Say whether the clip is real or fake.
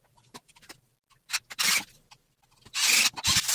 fake